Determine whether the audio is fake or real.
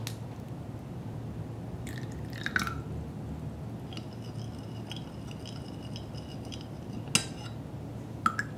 real